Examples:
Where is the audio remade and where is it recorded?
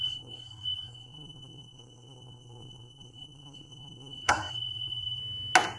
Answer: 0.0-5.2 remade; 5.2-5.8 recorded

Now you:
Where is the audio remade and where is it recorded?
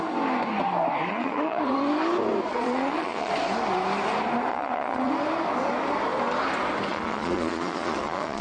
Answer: 0.0-1.1 recorded; 1.1-1.7 remade; 1.7-2.5 recorded; 2.5-3.3 remade; 3.3-4.5 recorded; 4.5-5.1 remade; 5.1-6.9 recorded; 6.9-8.4 remade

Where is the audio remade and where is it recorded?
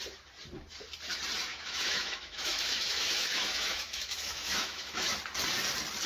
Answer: 0.0-1.5 recorded; 1.5-5.2 remade; 5.2-6.1 recorded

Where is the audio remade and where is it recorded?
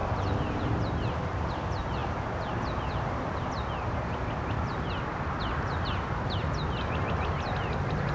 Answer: 0.0-8.1 recorded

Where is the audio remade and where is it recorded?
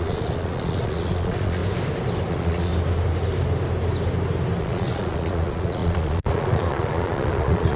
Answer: 0.0-1.6 remade; 1.6-2.3 recorded; 2.3-2.7 remade; 2.7-4.6 recorded; 4.6-7.8 remade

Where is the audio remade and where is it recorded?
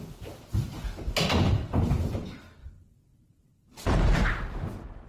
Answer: 0.0-2.6 recorded; 2.6-4.3 remade; 4.3-5.1 recorded